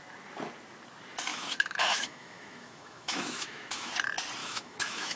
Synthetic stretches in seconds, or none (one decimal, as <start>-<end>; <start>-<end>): 1.3-3.9; 4.4-5.2